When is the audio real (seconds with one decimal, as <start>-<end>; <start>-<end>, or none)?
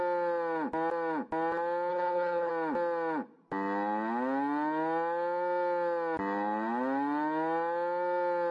0.0-1.9; 2.5-8.5